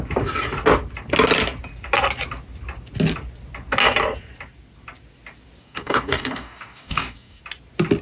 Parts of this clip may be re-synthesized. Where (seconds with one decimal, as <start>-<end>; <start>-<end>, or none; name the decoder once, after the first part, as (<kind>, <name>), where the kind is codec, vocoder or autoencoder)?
5.6-7.4 (codec, DAC)